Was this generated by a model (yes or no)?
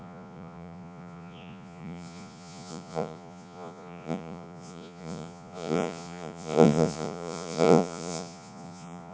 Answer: yes